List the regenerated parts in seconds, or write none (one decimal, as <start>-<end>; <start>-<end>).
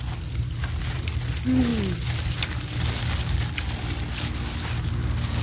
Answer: none